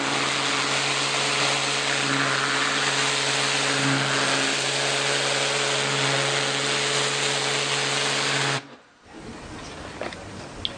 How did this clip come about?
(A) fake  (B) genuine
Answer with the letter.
B